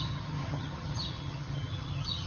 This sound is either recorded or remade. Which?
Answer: remade